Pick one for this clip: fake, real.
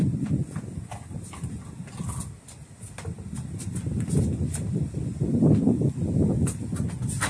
real